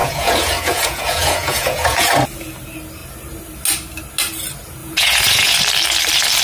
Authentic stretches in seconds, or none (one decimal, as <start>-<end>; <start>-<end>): 2.1-4.8; 5.6-6.4

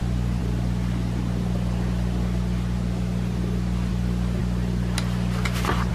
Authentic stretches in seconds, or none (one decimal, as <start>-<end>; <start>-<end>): 0.0-5.9

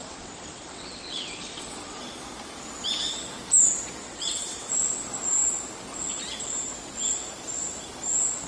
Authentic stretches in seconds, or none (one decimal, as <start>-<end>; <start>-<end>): 2.0-4.0; 4.7-8.5

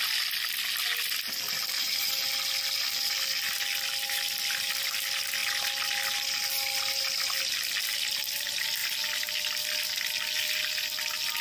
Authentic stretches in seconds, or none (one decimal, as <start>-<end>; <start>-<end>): 0.0-11.4